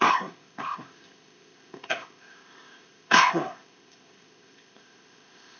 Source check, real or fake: fake